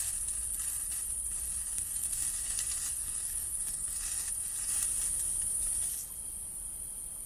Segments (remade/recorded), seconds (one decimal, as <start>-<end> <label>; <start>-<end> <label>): 0.0-1.6 recorded; 1.6-2.6 remade; 2.6-3.0 recorded; 3.0-4.3 remade; 4.3-7.3 recorded